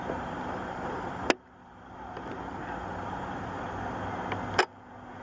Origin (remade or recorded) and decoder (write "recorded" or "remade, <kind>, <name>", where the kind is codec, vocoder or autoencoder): recorded